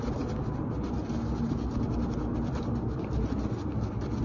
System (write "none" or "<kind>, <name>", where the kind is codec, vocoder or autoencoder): none